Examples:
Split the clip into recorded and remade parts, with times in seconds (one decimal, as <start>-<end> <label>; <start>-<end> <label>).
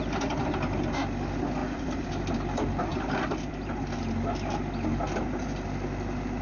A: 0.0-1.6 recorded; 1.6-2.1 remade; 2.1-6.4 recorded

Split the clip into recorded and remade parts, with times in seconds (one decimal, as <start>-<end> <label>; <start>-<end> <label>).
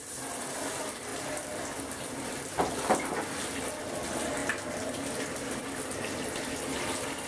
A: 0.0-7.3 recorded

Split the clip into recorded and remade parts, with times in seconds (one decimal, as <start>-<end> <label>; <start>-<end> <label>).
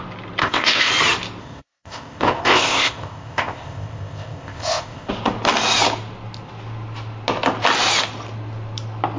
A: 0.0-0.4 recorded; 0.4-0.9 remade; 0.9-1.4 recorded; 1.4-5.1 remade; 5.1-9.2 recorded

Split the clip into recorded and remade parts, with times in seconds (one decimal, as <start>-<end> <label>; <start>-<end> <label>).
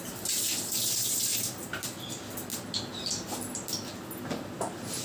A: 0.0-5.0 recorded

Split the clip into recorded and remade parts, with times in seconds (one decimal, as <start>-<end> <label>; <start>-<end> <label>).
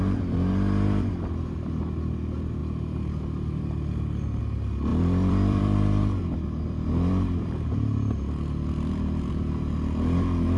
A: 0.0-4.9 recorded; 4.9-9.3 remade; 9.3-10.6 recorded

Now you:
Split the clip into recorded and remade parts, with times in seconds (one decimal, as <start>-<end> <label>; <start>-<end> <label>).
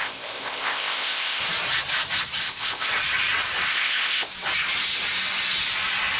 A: 0.0-1.4 remade; 1.4-2.4 recorded; 2.4-2.9 remade; 2.9-3.7 recorded; 3.7-4.3 remade; 4.3-6.2 recorded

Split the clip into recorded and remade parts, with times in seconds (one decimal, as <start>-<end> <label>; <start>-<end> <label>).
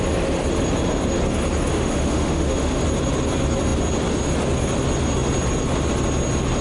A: 0.0-1.7 recorded; 1.7-2.8 remade; 2.8-6.6 recorded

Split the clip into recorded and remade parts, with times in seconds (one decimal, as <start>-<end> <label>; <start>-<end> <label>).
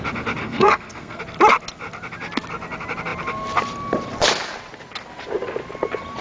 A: 0.0-0.4 recorded; 0.4-1.2 remade; 1.2-6.2 recorded